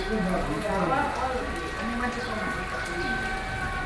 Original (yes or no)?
yes